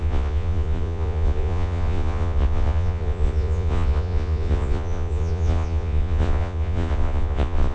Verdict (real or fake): fake